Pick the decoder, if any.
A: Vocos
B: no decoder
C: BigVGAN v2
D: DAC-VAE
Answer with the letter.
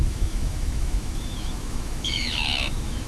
D